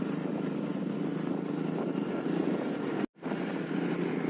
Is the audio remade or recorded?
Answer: recorded